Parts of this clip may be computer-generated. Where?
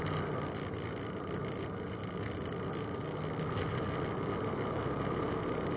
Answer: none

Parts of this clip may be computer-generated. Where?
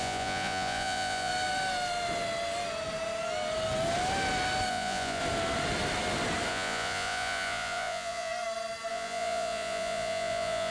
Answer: 0.0-1.3; 4.7-5.2; 6.5-8.3; 8.9-10.7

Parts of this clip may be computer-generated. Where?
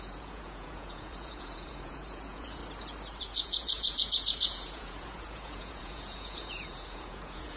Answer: 0.0-2.6; 3.2-7.6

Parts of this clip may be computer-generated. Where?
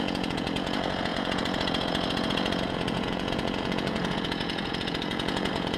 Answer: 0.0-5.8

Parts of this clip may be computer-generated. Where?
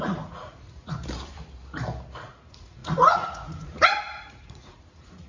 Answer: 0.0-1.0; 2.2-5.3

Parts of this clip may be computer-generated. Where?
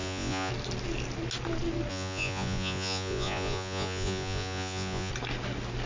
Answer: 0.0-0.5; 1.9-5.1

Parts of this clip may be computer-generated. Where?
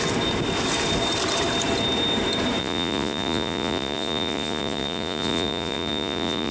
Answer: 2.6-6.5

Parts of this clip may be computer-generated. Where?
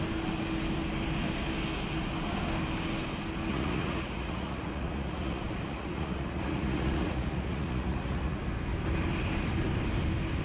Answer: 3.5-8.4